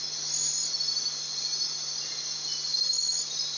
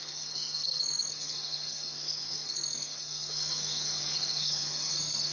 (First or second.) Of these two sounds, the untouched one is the first